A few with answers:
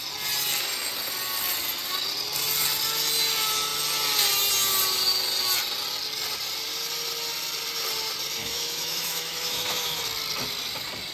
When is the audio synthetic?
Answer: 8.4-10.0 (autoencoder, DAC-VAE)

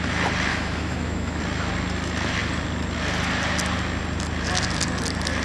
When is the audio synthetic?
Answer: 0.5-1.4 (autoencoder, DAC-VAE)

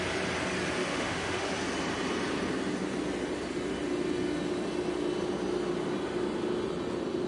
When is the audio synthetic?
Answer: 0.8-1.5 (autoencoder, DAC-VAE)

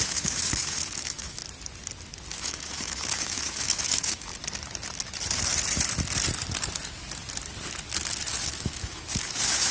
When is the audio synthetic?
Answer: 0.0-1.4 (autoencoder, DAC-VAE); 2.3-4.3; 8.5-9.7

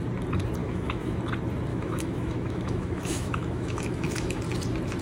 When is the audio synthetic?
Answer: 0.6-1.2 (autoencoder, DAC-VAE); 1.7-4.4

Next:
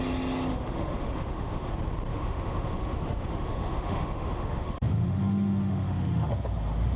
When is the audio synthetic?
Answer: 0.5-1.7 (autoencoder, DAC-VAE); 2.1-6.3